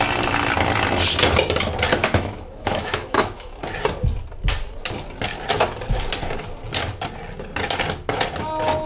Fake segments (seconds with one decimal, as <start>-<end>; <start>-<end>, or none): 2.0-3.6